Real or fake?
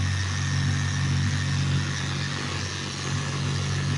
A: real